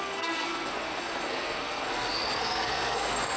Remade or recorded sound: remade